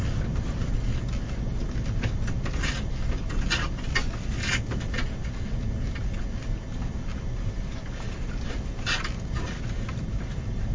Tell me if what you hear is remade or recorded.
recorded